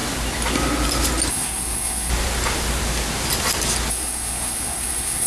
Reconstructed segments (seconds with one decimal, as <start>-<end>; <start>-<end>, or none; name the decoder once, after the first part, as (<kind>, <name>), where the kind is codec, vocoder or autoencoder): 1.3-2.1 (codec, SNAC); 3.9-5.3